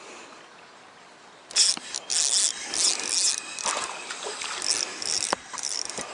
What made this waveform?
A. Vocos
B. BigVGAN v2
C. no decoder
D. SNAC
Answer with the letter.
C